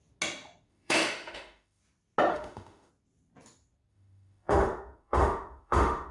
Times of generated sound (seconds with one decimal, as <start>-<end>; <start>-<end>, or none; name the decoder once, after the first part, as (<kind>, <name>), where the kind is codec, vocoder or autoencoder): 0.7-1.8 (autoencoder, DAC-VAE); 2.3-2.9; 3.9-6.1